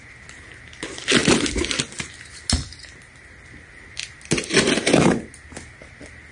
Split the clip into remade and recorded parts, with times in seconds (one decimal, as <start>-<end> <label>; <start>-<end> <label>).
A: 0.0-6.3 recorded